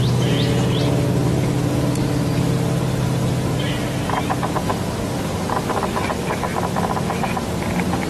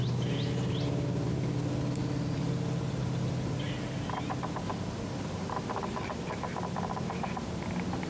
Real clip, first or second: first